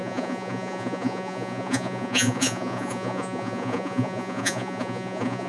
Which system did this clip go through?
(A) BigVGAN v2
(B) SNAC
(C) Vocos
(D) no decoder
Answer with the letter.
C